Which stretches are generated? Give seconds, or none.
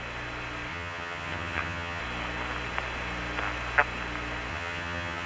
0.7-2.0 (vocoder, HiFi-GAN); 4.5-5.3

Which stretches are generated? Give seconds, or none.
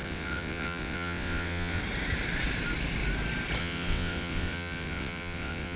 0.0-1.8 (vocoder, WaveNeXt); 3.6-5.8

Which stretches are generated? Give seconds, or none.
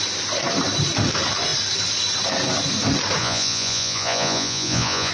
3.2-5.1 (vocoder, Vocos)